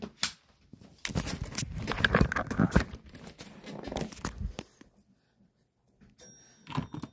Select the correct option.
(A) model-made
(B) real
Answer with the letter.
B